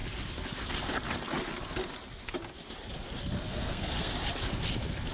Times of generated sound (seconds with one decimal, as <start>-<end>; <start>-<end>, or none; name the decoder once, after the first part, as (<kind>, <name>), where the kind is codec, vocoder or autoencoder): 3.5-4.1 (codec, SNAC)